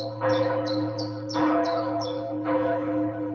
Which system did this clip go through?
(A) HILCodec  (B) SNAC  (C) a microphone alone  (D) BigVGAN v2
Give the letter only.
A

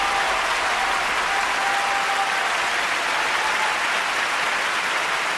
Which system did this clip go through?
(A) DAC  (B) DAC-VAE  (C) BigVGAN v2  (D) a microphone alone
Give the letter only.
D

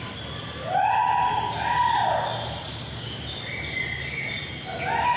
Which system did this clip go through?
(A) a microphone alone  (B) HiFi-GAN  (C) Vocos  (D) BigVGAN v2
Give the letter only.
A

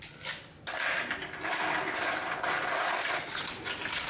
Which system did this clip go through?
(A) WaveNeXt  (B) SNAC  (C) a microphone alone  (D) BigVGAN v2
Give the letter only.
C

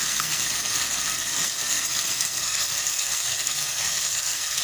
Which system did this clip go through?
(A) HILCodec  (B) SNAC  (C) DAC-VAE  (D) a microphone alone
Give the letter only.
B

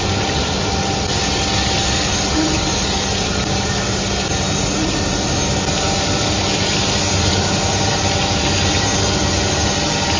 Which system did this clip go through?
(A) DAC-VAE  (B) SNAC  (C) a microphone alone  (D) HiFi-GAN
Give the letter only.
C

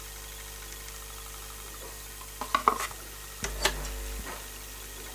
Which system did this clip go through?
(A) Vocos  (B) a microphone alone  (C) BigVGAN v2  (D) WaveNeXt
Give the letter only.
B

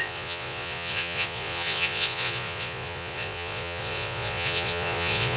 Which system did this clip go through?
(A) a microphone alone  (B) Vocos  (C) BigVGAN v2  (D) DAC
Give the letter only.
B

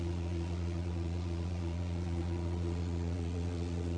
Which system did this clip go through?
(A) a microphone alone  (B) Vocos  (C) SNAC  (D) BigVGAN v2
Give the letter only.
B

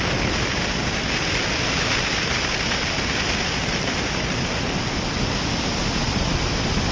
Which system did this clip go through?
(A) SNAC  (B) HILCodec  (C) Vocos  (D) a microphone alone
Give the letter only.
D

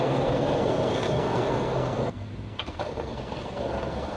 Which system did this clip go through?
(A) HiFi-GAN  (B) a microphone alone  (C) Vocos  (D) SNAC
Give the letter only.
D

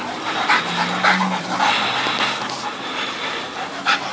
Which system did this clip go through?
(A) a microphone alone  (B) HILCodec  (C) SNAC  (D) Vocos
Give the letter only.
A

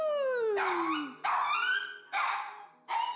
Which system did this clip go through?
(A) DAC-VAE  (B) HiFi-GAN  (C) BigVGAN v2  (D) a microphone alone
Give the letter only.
D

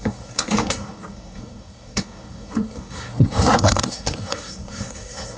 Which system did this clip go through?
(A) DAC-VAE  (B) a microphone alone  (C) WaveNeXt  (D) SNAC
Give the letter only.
D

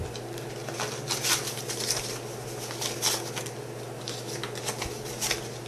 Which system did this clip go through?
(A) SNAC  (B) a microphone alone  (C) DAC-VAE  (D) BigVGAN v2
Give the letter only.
B